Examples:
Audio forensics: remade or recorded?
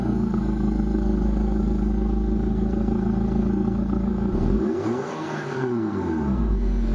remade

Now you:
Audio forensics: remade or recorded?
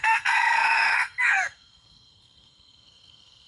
remade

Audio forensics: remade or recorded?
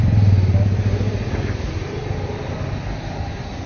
recorded